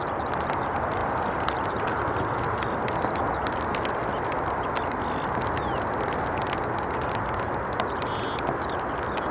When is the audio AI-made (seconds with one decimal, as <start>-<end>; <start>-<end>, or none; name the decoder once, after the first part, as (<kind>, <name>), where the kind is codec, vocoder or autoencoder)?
none